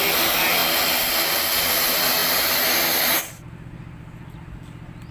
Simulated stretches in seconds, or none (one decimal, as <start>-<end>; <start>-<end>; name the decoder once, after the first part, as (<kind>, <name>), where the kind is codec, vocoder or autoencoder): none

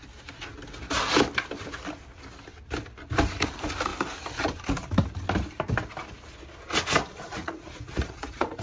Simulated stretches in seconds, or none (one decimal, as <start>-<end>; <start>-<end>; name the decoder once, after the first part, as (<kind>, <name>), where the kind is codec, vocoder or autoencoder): 7.3-8.6 (vocoder, Vocos)

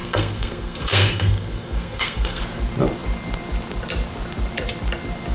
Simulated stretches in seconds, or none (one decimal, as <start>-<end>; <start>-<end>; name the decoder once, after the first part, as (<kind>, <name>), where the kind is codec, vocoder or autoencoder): 0.0-2.4 (codec, SNAC)